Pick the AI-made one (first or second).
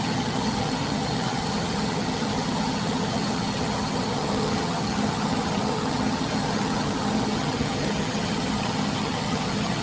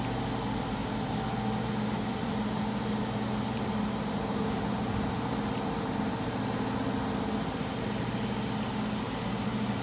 first